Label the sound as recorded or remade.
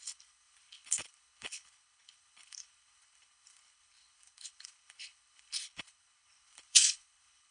remade